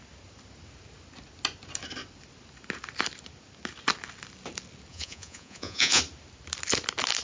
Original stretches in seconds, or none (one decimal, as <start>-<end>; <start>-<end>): 0.0-4.9; 6.0-7.2